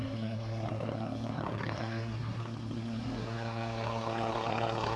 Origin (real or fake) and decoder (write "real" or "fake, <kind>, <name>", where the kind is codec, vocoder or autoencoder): fake, codec, SNAC